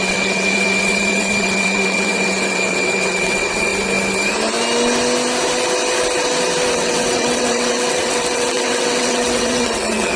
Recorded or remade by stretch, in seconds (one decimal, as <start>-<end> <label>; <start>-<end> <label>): 0.0-3.7 remade; 3.7-6.7 recorded; 6.7-10.2 remade